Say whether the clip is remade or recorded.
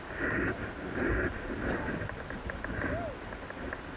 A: recorded